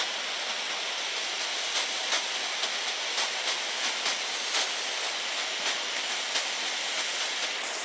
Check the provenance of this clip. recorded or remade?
recorded